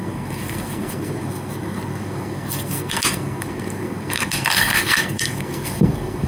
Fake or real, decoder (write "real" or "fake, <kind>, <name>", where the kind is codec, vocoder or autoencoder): fake, codec, SNAC